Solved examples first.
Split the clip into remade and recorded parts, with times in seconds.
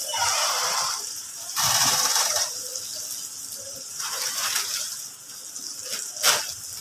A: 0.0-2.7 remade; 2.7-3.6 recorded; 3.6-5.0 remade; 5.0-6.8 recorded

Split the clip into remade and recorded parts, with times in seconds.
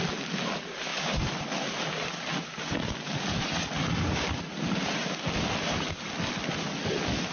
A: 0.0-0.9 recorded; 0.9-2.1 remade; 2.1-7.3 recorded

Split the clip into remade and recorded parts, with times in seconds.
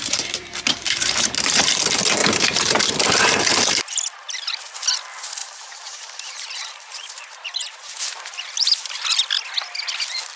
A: 0.0-1.7 remade; 1.7-2.2 recorded; 2.2-3.5 remade; 3.5-5.4 recorded; 5.4-9.0 remade; 9.0-10.4 recorded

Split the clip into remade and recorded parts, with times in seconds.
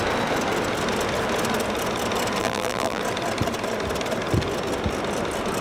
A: 0.0-2.4 recorded; 2.4-3.0 remade; 3.0-5.6 recorded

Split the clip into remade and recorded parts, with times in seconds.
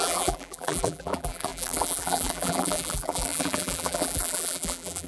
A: 0.0-5.1 remade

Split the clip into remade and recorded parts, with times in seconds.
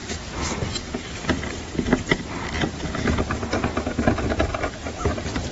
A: 0.0-2.3 remade; 2.3-5.5 recorded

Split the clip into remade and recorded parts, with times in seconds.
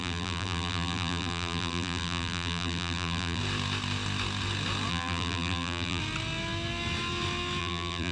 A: 0.0-3.4 remade; 3.4-4.9 recorded; 4.9-6.0 remade; 6.0-7.6 recorded; 7.6-8.1 remade